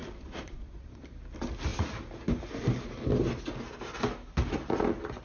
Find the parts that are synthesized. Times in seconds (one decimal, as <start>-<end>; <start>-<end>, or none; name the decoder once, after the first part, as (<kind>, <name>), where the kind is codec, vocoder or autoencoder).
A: 0.0-1.0 (vocoder, Vocos)

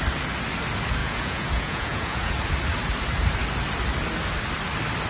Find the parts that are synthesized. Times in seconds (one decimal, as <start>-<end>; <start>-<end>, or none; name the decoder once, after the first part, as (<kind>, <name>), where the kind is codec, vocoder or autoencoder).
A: 1.0-2.3 (vocoder, Vocos)

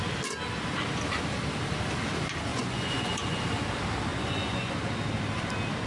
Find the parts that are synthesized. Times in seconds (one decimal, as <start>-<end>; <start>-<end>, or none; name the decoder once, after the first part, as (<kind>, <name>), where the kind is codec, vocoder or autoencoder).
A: 2.5-3.4 (vocoder, Vocos); 4.1-4.7

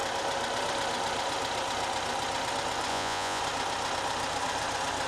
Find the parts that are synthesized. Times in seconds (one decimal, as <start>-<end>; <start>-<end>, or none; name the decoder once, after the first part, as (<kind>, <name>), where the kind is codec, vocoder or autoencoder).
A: 2.9-3.4 (vocoder, Vocos)

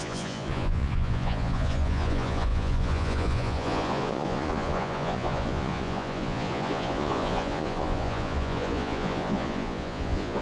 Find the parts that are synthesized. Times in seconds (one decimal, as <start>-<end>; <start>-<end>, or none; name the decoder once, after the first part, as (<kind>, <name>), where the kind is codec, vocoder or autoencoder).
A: 0.0-10.4 (vocoder, Vocos)

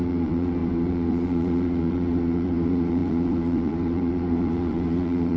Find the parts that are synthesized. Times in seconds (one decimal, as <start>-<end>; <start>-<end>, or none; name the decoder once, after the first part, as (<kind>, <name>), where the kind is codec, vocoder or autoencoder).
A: 0.0-5.4 (vocoder, Vocos)

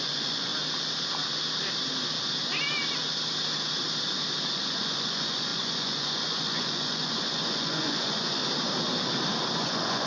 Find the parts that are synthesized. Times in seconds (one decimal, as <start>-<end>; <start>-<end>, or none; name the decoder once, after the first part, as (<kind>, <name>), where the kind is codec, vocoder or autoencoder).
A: 0.0-0.5 (vocoder, Vocos); 4.5-8.4; 9.6-10.1